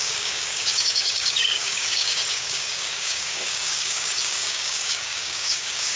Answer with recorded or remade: remade